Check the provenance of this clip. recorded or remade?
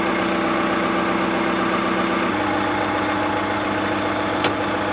recorded